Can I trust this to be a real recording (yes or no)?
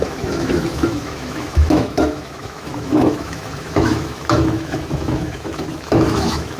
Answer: no